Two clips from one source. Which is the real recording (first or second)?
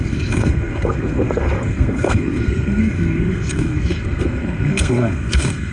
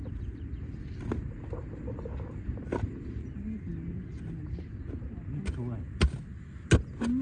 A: second